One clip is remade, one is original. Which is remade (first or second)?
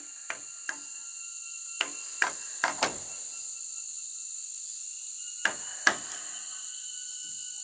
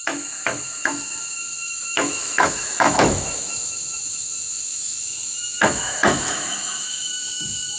second